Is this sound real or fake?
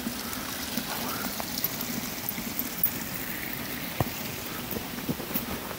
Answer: real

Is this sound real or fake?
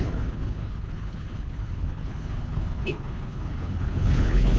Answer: fake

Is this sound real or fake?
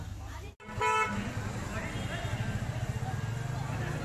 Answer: real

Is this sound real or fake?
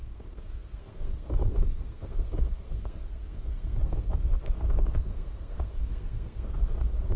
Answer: fake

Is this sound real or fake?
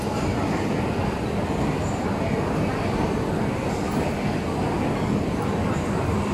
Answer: real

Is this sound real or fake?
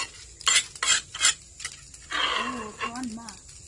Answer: real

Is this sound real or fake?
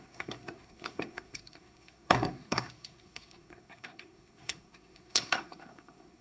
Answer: fake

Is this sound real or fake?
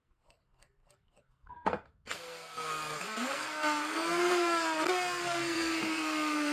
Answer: fake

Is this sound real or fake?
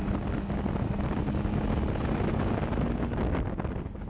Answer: real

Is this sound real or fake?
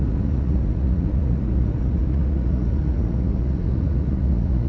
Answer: fake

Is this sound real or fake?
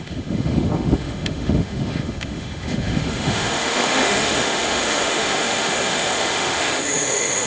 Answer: fake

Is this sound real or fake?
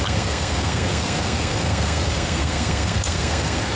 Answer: fake